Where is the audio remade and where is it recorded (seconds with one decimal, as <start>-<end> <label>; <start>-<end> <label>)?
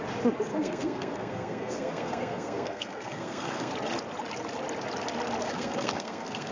0.0-0.5 recorded; 0.5-3.7 remade; 3.7-5.4 recorded; 5.4-6.5 remade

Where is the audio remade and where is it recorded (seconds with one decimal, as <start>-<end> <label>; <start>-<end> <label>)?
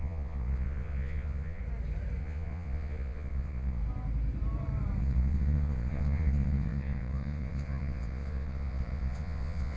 0.0-1.6 remade; 1.6-2.2 recorded; 2.2-3.8 remade; 3.8-5.0 recorded; 5.0-9.8 remade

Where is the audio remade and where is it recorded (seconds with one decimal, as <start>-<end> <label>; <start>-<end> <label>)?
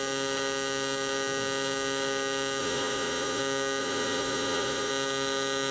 0.0-2.6 recorded; 2.6-3.4 remade; 3.4-3.8 recorded; 3.8-4.9 remade; 4.9-5.7 recorded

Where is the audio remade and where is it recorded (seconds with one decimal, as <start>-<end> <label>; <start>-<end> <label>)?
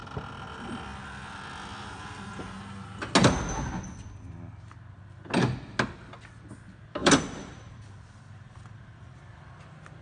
0.0-7.0 recorded; 7.0-9.6 remade; 9.6-10.0 recorded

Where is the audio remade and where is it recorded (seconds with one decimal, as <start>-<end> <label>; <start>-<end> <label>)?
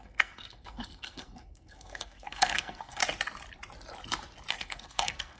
0.0-3.0 remade; 3.0-4.5 recorded; 4.5-5.4 remade